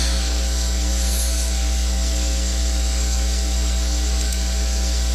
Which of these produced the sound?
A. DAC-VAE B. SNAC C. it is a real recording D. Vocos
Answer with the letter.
B